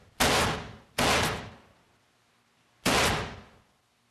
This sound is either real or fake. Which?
real